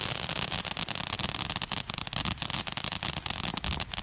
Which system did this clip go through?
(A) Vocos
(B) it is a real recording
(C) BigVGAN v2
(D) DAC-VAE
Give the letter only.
B